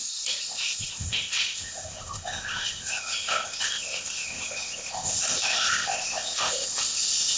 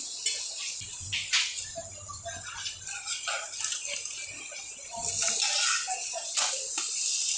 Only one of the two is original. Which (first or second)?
second